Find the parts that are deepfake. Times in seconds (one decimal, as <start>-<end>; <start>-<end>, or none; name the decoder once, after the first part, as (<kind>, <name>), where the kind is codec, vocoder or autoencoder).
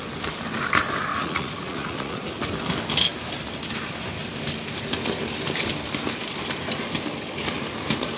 1.1-2.3 (vocoder, Vocos)